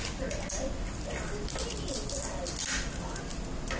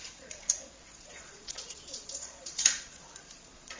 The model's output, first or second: second